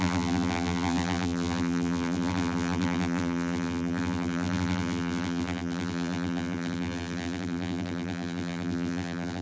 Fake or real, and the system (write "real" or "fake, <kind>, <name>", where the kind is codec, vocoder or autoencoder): fake, vocoder, BigVGAN v2